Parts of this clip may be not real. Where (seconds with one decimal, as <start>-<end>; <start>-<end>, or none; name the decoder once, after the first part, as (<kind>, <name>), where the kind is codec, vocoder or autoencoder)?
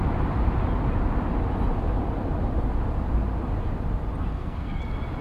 4.3-4.8 (codec, SNAC)